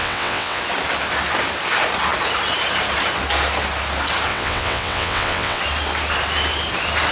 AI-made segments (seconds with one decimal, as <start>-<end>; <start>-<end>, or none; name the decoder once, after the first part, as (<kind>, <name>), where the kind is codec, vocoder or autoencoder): 0.0-0.6 (vocoder, WaveNeXt); 4.3-5.6